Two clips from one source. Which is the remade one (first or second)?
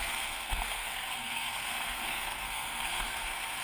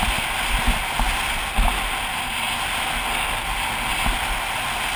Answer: first